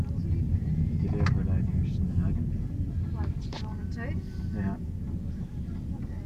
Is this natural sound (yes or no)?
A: yes